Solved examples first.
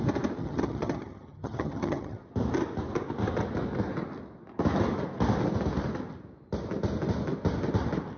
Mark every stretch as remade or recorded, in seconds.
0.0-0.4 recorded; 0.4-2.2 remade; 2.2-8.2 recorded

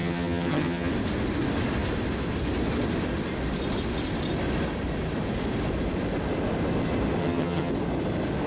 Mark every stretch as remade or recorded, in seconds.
0.0-0.9 remade; 0.9-7.2 recorded; 7.2-7.7 remade; 7.7-8.5 recorded

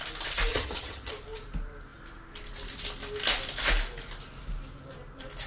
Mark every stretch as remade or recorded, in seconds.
0.0-0.5 recorded; 0.5-1.1 remade; 1.1-5.5 recorded

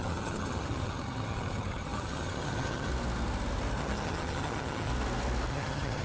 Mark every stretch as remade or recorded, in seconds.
0.0-2.9 remade; 2.9-3.8 recorded; 3.8-4.9 remade; 4.9-5.5 recorded; 5.5-6.0 remade

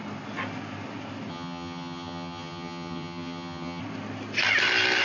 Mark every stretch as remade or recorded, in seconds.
0.0-1.3 recorded; 1.3-3.8 remade; 3.8-5.0 recorded

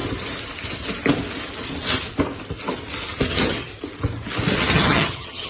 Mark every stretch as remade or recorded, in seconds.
0.0-3.3 recorded; 3.3-3.7 remade; 3.7-4.6 recorded; 4.6-5.5 remade

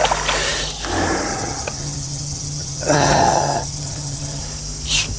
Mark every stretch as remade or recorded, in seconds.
0.0-1.3 recorded; 1.3-4.4 remade; 4.4-5.2 recorded